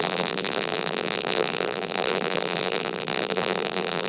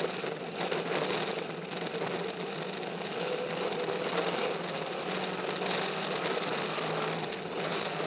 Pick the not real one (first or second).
first